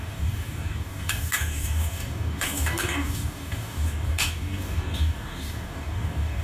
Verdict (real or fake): fake